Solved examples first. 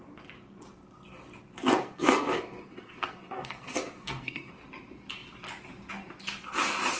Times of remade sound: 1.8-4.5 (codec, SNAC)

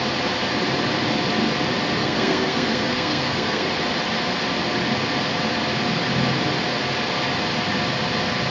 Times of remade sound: 2.0-3.7 (codec, SNAC)

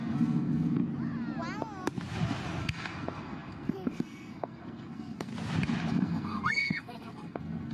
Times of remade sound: 0.0-0.8 (codec, SNAC); 2.6-5.3; 5.9-7.7